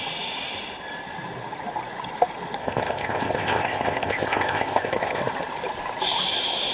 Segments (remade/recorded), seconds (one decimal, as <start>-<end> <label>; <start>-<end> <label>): 0.0-2.6 recorded; 2.6-5.2 remade; 5.2-6.7 recorded